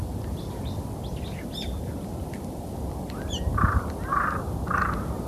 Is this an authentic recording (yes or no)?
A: yes